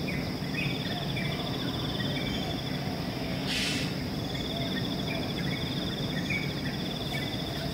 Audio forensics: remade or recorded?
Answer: recorded